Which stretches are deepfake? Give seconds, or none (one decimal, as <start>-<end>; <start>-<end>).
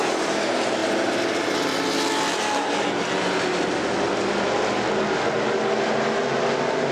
none